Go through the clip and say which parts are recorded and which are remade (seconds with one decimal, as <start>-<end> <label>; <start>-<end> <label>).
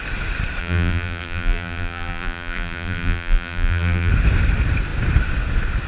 0.0-0.6 recorded; 0.6-4.1 remade; 4.1-5.9 recorded